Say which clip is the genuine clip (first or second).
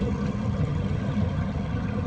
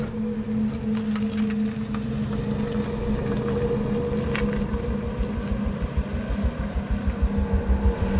second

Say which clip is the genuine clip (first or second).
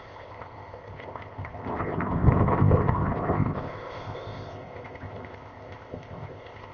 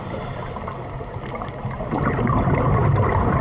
second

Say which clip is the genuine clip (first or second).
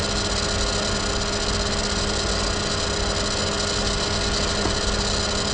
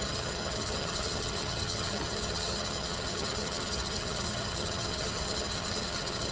first